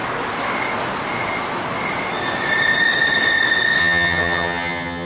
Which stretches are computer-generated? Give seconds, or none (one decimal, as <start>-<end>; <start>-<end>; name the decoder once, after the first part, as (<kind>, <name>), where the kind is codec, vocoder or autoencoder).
3.8-5.1 (vocoder, HiFi-GAN)